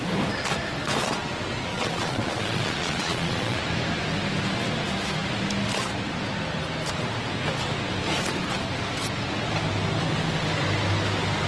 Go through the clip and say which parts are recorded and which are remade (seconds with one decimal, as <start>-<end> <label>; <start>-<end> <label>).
0.0-1.7 recorded; 1.7-3.6 remade; 3.6-11.5 recorded